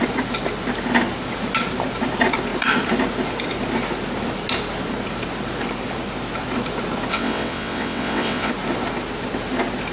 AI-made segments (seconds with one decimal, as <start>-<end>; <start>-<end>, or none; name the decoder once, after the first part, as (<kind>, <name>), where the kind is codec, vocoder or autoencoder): 7.1-8.5 (vocoder, WaveNeXt)